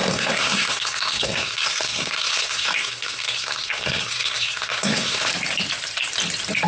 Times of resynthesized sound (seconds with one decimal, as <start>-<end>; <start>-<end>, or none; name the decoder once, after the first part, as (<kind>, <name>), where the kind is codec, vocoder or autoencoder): 0.0-5.3 (codec, SNAC)

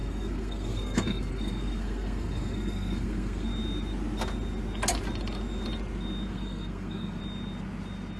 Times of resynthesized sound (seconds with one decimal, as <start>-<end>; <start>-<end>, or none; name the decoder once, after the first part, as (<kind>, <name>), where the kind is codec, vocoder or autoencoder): 0.0-3.5 (codec, SNAC); 6.3-7.2

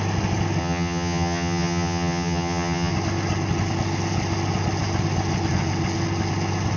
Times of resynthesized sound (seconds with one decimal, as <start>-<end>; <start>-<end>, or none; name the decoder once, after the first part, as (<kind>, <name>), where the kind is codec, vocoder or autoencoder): 0.6-2.9 (vocoder, HiFi-GAN)